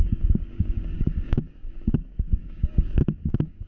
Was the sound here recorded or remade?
remade